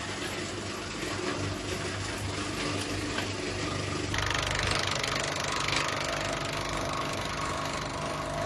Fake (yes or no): no